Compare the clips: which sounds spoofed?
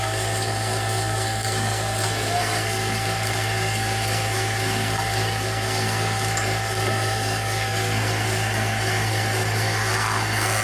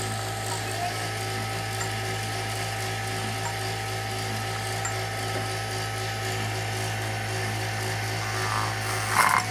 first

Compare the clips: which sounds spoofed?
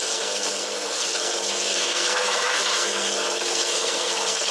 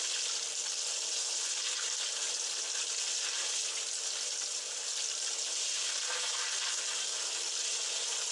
first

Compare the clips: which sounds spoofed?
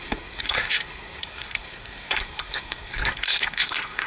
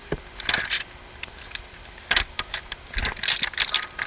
first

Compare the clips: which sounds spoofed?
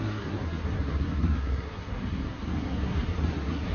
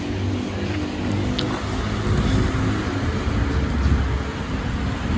first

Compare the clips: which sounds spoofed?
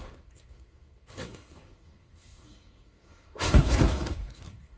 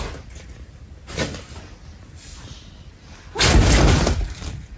first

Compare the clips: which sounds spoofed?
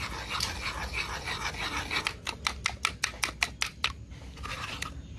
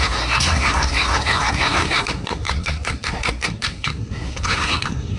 second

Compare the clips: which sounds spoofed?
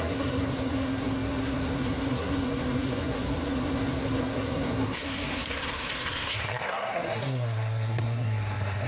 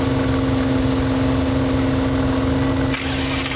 first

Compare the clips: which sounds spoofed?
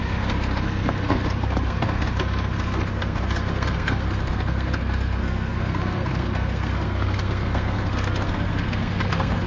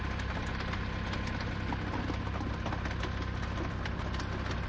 first